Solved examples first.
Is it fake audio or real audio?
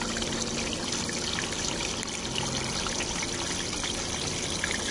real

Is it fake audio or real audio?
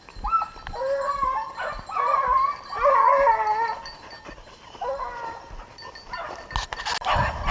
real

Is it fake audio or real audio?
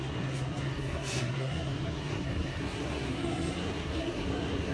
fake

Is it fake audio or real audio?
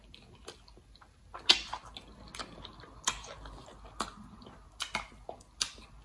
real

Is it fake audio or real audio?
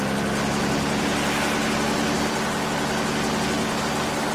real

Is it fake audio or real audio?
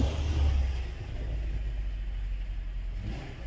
real